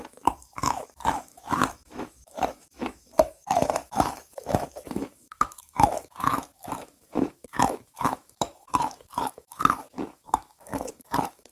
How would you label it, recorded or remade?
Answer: remade